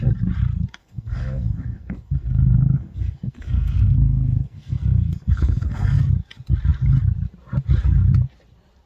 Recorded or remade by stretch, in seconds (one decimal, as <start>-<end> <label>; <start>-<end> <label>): 0.0-0.8 recorded; 0.8-6.0 remade; 6.0-8.9 recorded